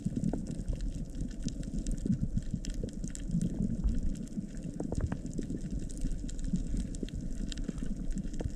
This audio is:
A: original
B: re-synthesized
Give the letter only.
A